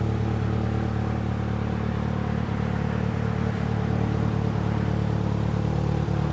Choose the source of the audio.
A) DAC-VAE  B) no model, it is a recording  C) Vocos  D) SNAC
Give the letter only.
B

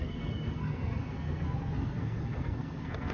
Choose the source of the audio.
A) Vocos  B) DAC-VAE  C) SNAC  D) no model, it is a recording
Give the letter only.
C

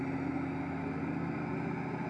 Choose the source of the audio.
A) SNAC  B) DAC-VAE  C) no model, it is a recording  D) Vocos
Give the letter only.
C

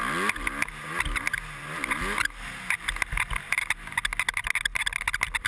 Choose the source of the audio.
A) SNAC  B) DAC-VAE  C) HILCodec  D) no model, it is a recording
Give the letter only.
D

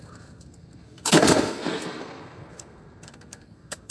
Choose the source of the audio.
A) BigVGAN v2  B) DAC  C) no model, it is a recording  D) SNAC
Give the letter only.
D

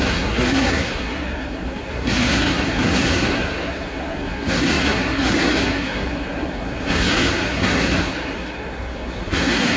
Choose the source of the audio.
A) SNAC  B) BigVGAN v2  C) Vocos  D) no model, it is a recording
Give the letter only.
A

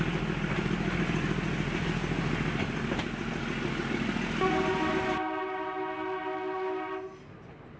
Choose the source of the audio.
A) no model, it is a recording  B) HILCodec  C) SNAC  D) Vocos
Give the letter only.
A